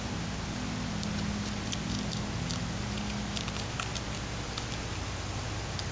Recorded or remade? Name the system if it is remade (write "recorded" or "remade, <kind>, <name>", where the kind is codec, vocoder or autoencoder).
recorded